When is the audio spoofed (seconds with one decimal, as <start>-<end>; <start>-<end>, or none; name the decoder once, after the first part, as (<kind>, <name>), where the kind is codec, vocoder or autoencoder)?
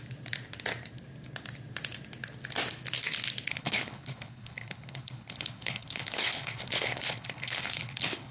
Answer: 3.5-8.3 (codec, HILCodec)